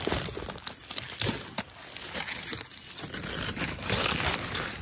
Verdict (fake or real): real